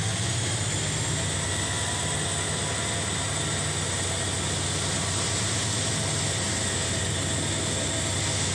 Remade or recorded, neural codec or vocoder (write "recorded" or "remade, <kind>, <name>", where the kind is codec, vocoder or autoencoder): recorded